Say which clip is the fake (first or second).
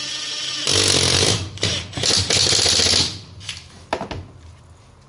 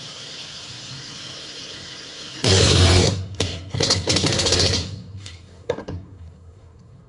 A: second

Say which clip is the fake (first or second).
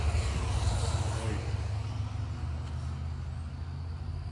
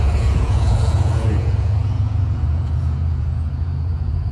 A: second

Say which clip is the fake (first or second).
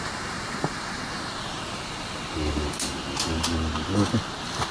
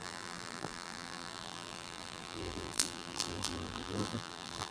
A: second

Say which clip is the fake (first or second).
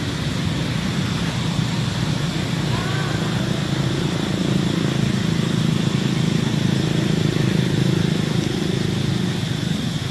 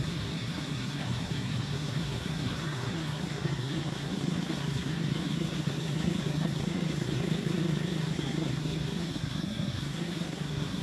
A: second